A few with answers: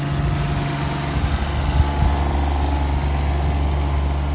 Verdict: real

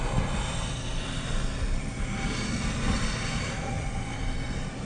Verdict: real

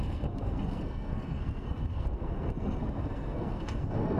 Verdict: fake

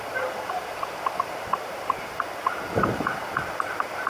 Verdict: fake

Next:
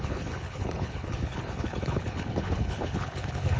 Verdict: fake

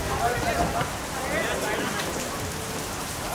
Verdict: real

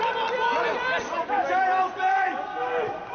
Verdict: real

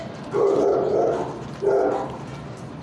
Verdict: real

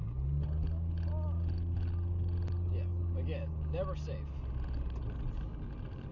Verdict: real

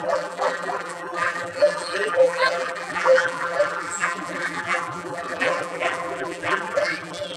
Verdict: fake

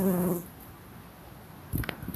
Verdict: real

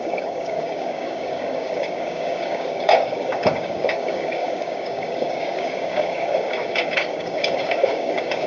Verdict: fake